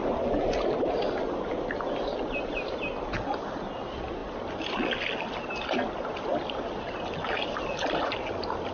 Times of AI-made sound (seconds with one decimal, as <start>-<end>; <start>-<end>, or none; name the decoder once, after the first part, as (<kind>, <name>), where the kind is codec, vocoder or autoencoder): none